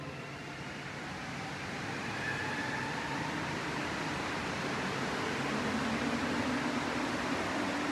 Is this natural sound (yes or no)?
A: yes